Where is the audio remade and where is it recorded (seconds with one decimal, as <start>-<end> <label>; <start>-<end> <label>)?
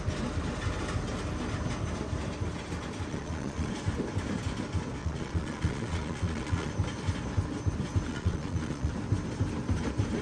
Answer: 0.0-3.1 recorded; 3.1-3.7 remade; 3.7-5.0 recorded; 5.0-6.7 remade; 6.7-8.1 recorded; 8.1-8.9 remade; 8.9-10.2 recorded